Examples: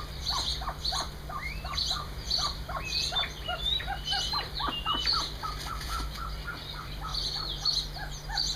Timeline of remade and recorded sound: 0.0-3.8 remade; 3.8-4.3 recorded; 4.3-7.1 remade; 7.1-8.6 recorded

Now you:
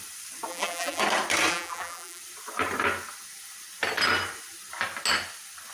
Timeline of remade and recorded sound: 0.0-0.5 recorded; 0.5-1.0 remade; 1.0-1.5 recorded; 1.5-2.2 remade; 2.2-5.7 recorded